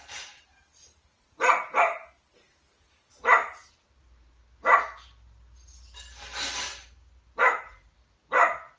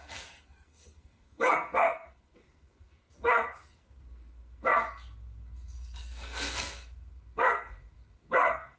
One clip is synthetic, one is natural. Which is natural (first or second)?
first